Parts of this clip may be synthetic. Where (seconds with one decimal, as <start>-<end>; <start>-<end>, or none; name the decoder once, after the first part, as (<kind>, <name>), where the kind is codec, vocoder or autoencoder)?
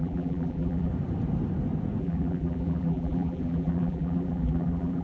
0.0-0.9 (vocoder, BigVGAN v2); 2.0-5.0